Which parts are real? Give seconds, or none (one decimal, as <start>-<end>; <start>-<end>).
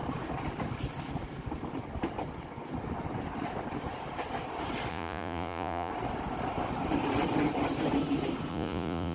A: 0.0-4.9; 5.9-8.5